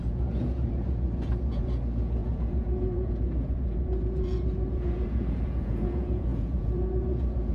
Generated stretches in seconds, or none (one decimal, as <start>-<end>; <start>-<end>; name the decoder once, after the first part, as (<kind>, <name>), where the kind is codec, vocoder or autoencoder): 0.0-7.5 (vocoder, Vocos)